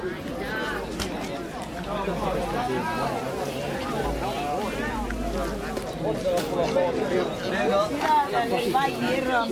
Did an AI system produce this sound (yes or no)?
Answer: no